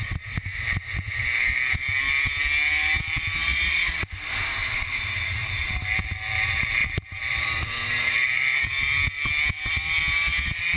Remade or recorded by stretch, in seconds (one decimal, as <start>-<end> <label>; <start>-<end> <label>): 0.0-3.4 recorded; 3.4-4.1 remade; 4.1-4.6 recorded; 4.6-5.8 remade; 5.8-6.8 recorded; 6.8-8.7 remade; 8.7-10.8 recorded